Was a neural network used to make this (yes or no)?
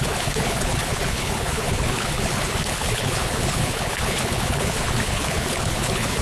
yes